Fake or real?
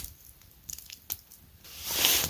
real